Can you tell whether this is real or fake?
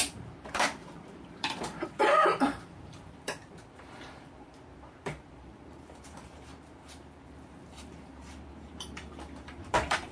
fake